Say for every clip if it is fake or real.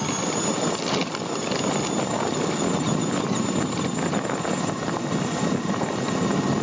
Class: real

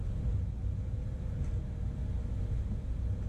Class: real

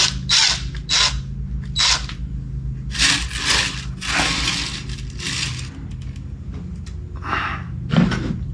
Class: real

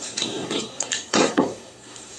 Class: fake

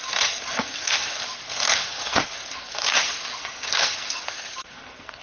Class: fake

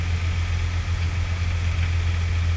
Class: real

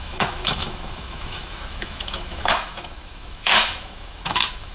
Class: fake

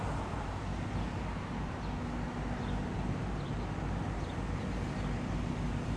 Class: real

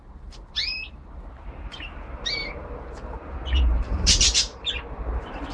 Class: fake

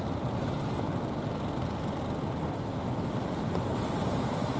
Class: real